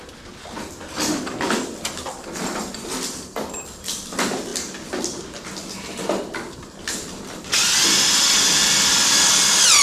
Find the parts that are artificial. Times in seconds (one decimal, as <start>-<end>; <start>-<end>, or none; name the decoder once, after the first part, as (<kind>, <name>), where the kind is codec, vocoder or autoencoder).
none